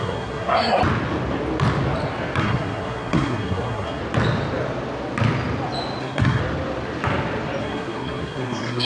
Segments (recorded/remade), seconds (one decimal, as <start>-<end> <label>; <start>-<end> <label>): 0.0-0.8 remade; 0.8-2.4 recorded; 2.4-4.0 remade; 4.0-6.0 recorded; 6.0-6.4 remade; 6.4-7.6 recorded; 7.6-8.8 remade